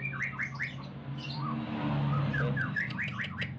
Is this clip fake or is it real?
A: real